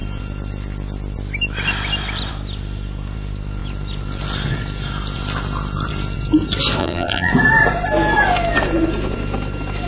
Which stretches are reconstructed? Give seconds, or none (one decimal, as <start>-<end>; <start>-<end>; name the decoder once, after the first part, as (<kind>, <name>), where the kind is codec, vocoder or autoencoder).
6.8-7.3 (vocoder, BigVGAN v2)